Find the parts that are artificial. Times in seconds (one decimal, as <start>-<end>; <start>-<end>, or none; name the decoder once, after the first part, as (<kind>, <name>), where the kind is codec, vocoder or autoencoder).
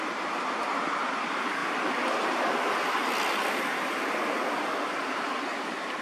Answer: 0.0-1.6 (vocoder, BigVGAN v2); 3.5-6.0